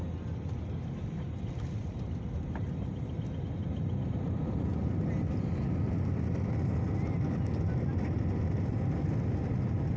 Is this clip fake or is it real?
real